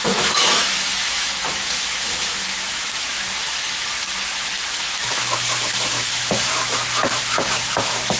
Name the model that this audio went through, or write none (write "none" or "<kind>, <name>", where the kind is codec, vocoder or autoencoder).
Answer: autoencoder, DAC-VAE